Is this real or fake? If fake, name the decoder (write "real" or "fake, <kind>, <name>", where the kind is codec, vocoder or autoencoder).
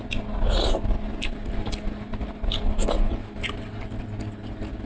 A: real